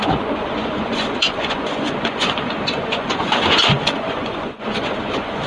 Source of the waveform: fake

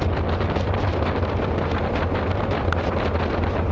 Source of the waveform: real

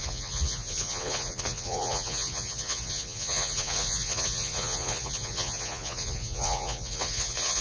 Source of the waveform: fake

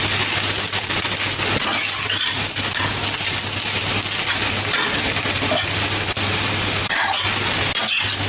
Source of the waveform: real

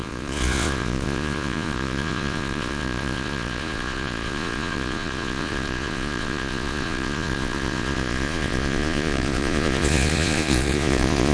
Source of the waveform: fake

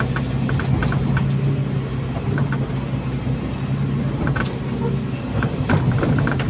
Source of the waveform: real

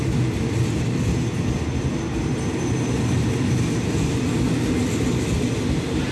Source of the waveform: real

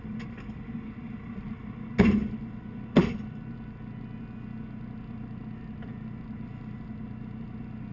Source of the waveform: real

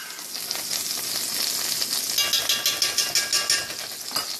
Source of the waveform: real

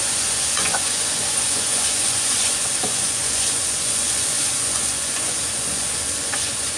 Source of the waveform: fake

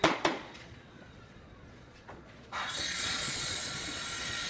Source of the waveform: fake